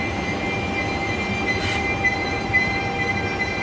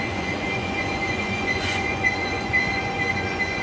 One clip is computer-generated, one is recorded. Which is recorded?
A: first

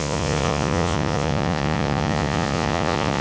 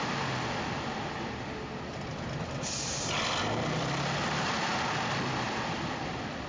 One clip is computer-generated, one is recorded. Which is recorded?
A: second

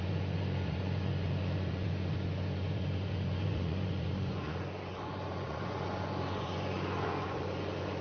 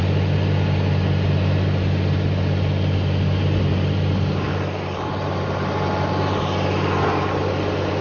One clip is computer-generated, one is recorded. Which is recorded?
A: second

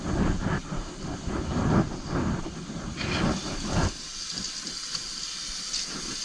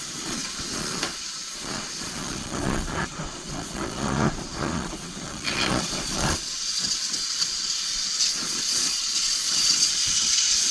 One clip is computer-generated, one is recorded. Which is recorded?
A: first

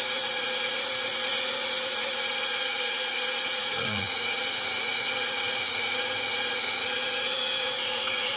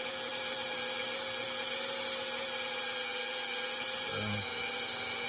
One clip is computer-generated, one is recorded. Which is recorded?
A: second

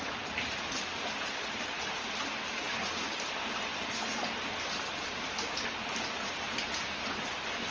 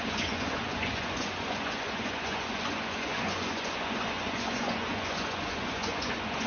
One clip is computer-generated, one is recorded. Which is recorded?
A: first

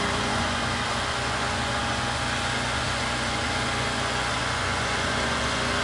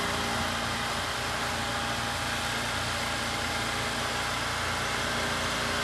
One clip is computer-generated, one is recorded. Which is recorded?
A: second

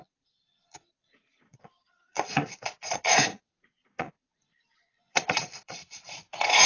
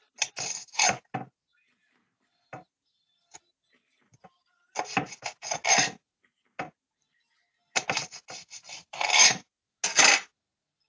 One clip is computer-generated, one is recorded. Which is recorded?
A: second